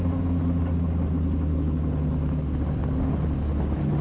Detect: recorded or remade recorded